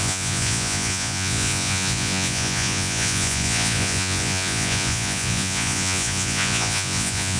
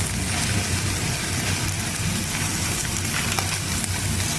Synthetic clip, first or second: first